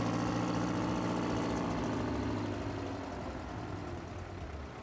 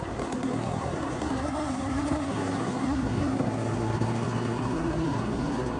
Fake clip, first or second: second